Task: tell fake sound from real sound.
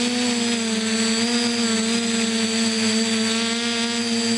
real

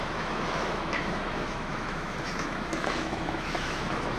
fake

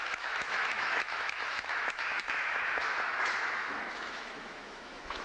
fake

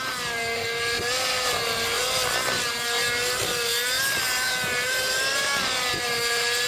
real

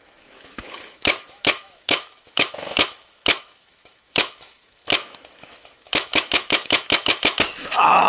fake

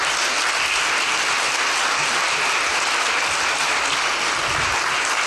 real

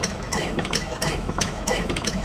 fake